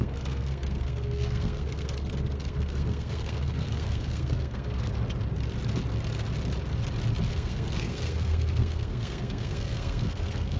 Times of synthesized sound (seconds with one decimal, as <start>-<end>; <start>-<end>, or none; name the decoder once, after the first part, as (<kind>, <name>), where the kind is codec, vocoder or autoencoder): 0.0-4.9 (codec, SNAC); 7.3-10.6